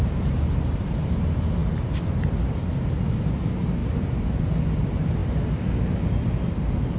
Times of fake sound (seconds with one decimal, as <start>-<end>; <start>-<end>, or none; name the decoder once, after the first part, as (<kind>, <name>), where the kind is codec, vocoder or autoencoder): none